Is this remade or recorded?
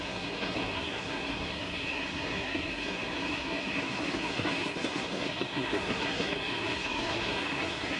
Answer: remade